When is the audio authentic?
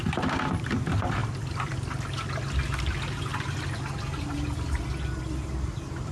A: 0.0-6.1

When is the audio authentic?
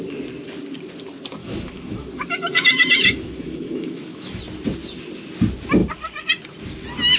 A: 0.0-1.4; 4.4-7.2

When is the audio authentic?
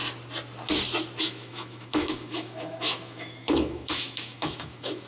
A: 0.0-1.2